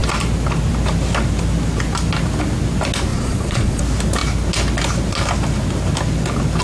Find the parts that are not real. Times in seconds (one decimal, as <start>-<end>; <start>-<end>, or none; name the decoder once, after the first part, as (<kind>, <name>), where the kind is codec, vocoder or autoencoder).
3.1-3.8 (vocoder, Vocos)